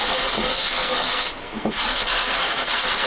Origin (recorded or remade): remade